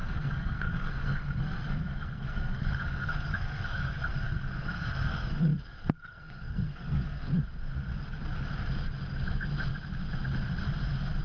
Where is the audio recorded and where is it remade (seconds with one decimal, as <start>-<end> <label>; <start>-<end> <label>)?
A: 0.0-7.3 remade; 7.3-11.2 recorded

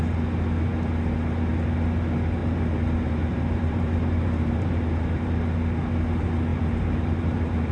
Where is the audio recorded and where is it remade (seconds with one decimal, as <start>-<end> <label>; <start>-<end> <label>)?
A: 0.0-2.4 recorded; 2.4-5.3 remade; 5.3-6.5 recorded; 6.5-7.7 remade

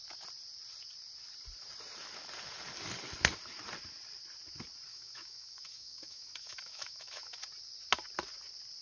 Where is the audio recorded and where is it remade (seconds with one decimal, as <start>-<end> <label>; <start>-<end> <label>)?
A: 0.0-4.9 recorded; 4.9-7.4 remade; 7.4-8.8 recorded

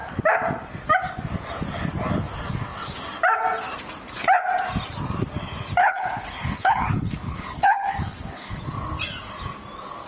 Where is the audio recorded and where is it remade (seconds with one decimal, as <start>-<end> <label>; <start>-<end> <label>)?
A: 0.0-5.8 recorded; 5.8-8.6 remade; 8.6-10.1 recorded

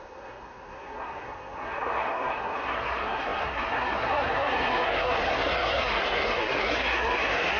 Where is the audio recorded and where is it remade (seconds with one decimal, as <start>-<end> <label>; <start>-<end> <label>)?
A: 0.0-7.6 remade